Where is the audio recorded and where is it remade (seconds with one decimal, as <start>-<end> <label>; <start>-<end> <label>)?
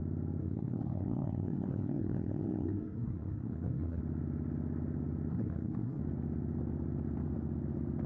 0.0-0.4 recorded; 0.4-4.0 remade; 4.0-5.3 recorded; 5.3-6.0 remade; 6.0-8.1 recorded